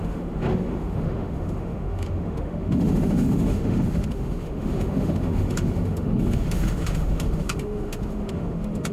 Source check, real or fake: fake